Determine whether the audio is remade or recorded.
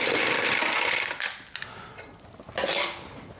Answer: recorded